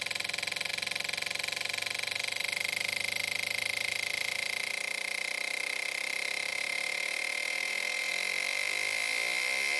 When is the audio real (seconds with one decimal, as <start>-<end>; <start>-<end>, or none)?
0.0-6.5; 8.1-9.8